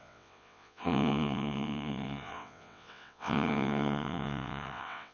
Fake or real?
fake